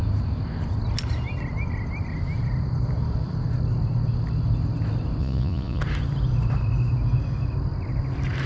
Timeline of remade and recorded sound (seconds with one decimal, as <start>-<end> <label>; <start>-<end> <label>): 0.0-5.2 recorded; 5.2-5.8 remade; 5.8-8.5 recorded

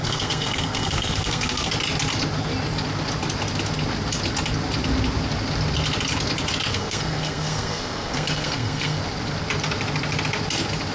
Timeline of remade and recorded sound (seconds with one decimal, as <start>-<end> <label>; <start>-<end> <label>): 0.0-1.7 remade; 1.7-6.7 recorded; 6.7-9.0 remade; 9.0-10.9 recorded

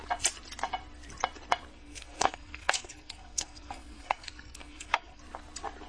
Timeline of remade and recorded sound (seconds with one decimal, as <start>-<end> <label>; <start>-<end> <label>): 0.0-1.7 recorded; 1.7-5.2 remade; 5.2-5.9 recorded

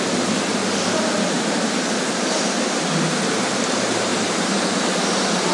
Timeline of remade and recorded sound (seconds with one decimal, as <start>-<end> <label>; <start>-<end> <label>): 0.0-0.6 remade; 0.6-3.6 recorded; 3.6-5.5 remade

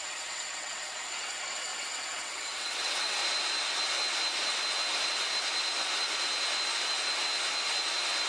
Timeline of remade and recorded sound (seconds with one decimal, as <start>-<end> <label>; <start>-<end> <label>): 0.0-3.2 remade; 3.2-8.3 recorded